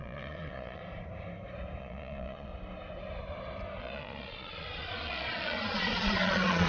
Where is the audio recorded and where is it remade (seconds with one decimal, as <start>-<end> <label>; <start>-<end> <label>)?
0.0-0.8 remade; 0.8-1.8 recorded; 1.8-2.5 remade; 2.5-3.8 recorded; 3.8-6.7 remade